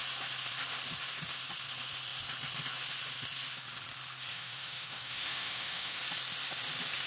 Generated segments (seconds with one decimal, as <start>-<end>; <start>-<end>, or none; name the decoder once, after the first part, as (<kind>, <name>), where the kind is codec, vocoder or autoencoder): 4.3-6.0 (autoencoder, DAC-VAE)